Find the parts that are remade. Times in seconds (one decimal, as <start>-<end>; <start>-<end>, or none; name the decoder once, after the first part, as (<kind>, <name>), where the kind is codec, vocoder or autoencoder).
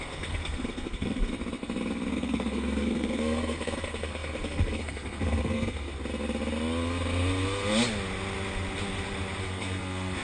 0.0-1.3 (codec, SNAC); 2.1-5.9; 9.4-10.2